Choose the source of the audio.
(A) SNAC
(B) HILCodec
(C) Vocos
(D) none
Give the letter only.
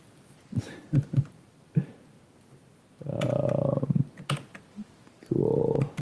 D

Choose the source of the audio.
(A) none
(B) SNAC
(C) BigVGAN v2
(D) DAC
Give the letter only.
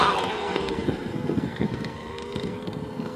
B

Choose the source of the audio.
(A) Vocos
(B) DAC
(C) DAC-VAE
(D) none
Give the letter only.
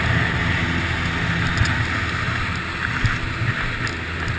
D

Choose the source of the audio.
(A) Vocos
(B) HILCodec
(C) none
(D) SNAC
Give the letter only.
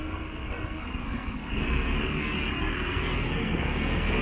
D